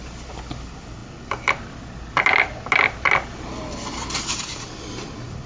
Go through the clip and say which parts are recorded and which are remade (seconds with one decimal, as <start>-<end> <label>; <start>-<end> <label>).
0.0-5.5 recorded